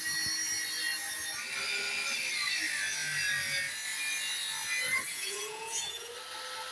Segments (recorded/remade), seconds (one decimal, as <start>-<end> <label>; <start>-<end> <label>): 0.0-5.1 recorded; 5.1-6.1 remade; 6.1-6.7 recorded